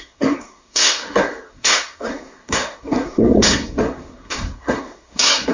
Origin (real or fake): fake